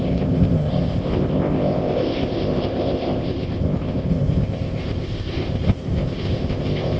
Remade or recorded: remade